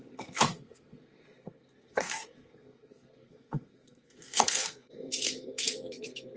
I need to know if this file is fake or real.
fake